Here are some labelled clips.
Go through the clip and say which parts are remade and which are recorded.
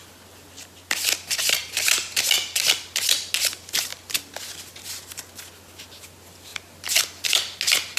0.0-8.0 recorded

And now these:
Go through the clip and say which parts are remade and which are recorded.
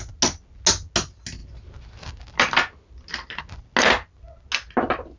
0.0-5.2 recorded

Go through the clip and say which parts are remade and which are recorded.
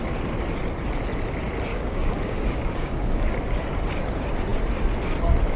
0.0-1.7 recorded; 1.7-3.3 remade; 3.3-5.6 recorded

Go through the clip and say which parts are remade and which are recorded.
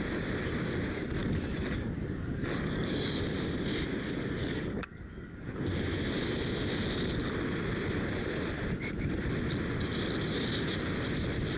0.0-1.2 recorded; 1.2-3.1 remade; 3.1-4.4 recorded; 4.4-5.6 remade; 5.6-11.6 recorded